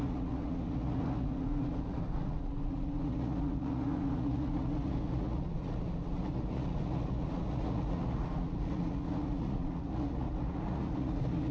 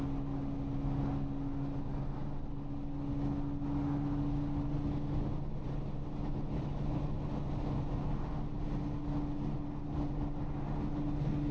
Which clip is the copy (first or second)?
first